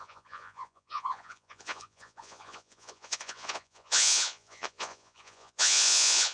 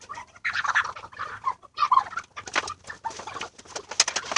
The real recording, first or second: second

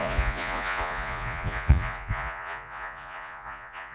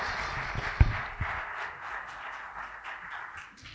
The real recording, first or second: second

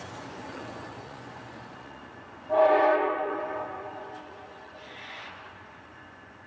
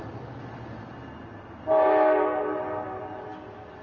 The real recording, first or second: second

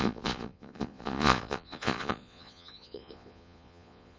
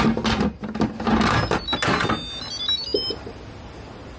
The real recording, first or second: second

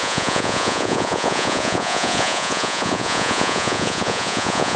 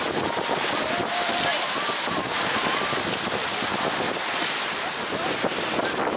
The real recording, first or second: second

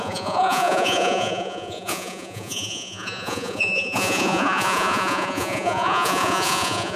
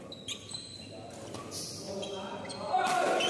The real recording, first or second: second